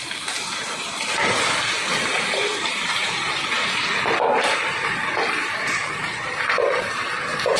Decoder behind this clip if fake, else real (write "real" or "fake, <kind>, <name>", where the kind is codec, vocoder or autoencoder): fake, vocoder, BigVGAN v2